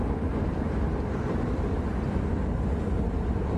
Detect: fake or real real